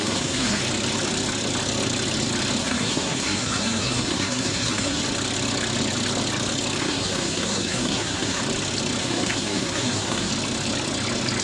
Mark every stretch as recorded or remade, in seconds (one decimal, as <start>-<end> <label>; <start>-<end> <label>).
0.0-0.6 remade; 0.6-2.6 recorded; 2.6-5.0 remade; 5.0-6.8 recorded; 6.8-8.4 remade; 8.4-9.0 recorded; 9.0-10.3 remade; 10.3-11.4 recorded

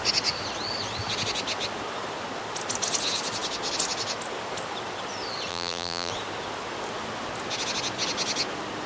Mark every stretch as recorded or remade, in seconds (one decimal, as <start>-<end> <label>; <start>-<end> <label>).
0.0-5.5 recorded; 5.5-6.1 remade; 6.1-8.9 recorded